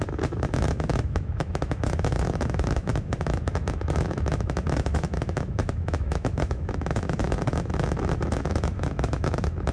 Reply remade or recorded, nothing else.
remade